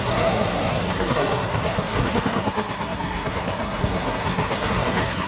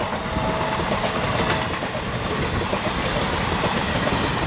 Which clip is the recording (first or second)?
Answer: second